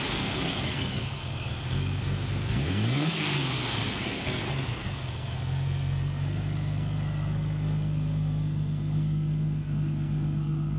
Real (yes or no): no